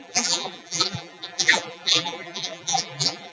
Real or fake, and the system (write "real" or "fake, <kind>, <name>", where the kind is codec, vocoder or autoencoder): fake, vocoder, BigVGAN v2